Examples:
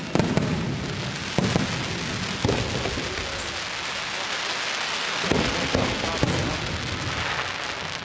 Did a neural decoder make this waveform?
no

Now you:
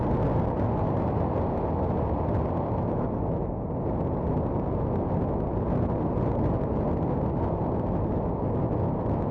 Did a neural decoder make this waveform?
no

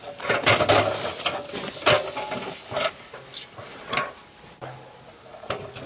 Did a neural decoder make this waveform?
no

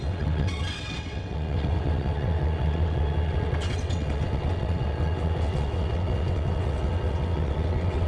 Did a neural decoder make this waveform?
yes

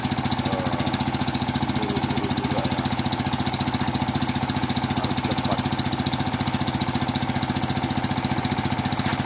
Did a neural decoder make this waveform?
no